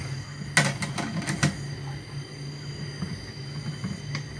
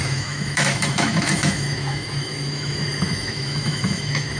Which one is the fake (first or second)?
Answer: second